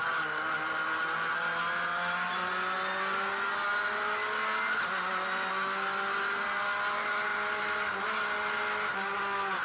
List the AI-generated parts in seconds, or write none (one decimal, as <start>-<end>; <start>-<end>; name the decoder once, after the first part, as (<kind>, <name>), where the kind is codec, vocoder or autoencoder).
none